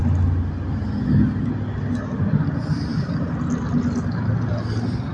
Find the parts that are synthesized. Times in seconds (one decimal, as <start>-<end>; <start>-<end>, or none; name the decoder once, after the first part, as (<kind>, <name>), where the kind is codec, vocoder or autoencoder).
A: none